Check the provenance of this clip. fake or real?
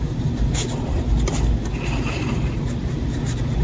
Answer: real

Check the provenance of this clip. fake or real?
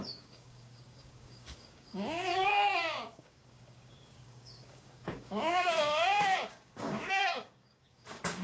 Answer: fake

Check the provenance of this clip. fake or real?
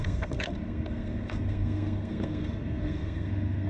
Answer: fake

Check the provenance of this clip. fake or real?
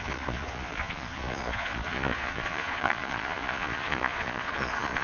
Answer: fake